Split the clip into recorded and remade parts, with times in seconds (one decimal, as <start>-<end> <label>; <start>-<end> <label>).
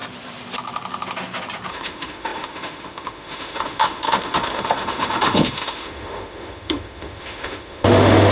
0.0-1.7 recorded; 1.7-8.3 remade